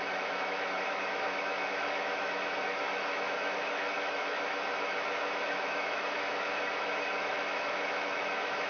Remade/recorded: remade